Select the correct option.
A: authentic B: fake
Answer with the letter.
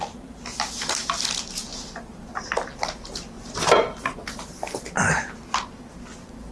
A